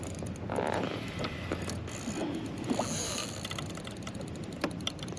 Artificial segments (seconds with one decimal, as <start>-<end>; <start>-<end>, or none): none